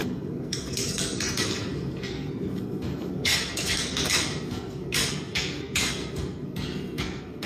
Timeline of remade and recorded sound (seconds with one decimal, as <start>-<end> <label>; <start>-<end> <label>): 0.0-7.5 remade